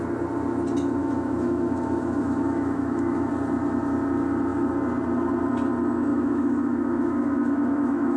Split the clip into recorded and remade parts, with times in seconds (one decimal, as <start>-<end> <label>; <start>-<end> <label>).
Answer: 0.0-1.0 recorded; 1.0-3.3 remade; 3.3-6.1 recorded; 6.1-8.2 remade